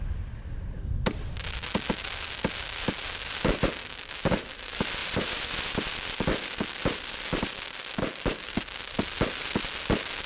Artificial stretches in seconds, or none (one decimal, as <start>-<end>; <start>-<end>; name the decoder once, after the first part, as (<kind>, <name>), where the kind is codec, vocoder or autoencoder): 5.0-8.6 (vocoder, BigVGAN v2)